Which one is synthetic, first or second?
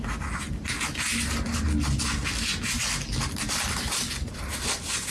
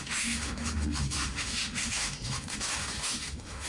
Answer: second